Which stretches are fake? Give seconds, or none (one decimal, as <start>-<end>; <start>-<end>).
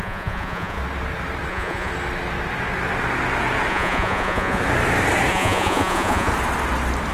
0.0-0.8; 1.5-1.9; 3.7-4.6; 5.3-6.3